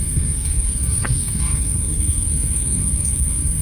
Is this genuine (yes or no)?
no